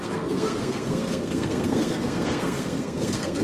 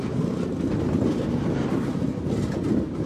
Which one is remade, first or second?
first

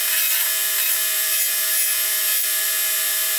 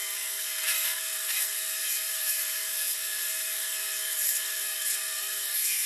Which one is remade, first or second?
second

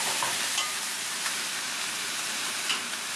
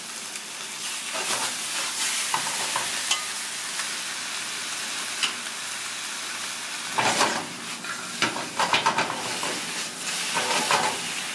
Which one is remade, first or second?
first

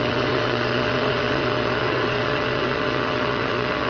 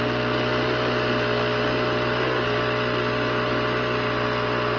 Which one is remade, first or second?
first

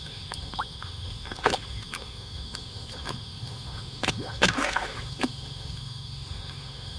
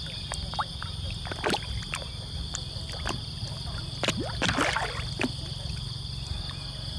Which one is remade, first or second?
first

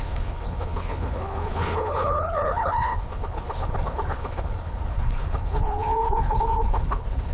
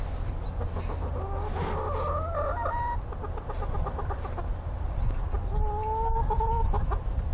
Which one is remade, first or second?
first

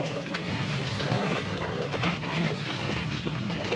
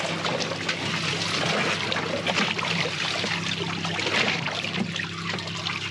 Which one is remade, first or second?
first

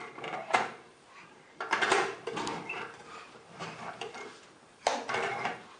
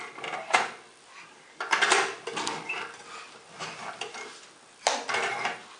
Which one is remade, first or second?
first